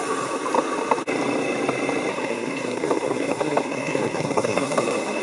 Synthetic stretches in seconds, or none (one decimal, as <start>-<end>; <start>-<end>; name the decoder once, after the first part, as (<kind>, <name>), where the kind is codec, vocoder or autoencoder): 2.1-5.2 (codec, SNAC)